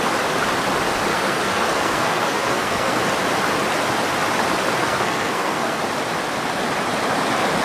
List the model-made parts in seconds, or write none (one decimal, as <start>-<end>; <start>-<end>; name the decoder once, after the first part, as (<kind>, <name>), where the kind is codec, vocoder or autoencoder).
1.1-3.0 (codec, SNAC); 4.8-5.8